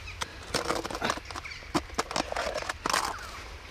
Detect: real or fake real